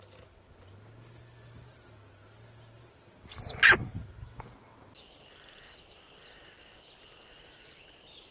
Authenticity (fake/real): real